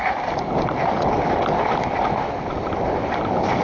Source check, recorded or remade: recorded